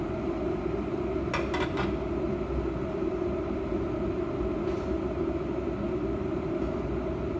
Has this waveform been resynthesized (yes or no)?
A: no